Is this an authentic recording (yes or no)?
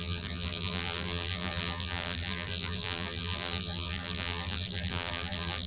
no